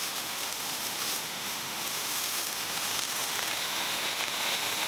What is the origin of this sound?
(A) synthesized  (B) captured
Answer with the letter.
A